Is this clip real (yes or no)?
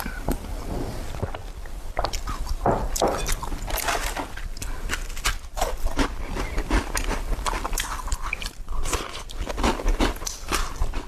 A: yes